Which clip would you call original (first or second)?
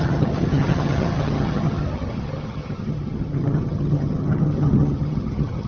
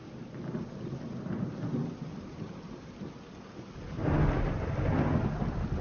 second